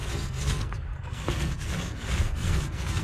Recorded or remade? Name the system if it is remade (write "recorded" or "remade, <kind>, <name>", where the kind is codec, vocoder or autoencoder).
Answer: remade, codec, SNAC